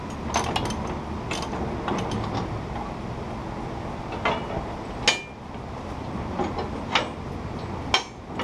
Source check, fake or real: real